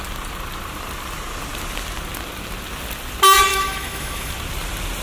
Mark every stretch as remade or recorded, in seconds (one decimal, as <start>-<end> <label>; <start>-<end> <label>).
0.0-3.5 recorded; 3.5-4.3 remade; 4.3-5.0 recorded